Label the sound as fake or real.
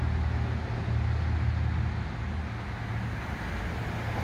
real